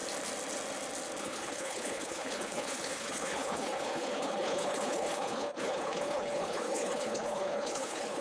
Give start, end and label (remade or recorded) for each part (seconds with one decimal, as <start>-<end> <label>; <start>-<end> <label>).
0.0-1.2 recorded; 1.2-8.2 remade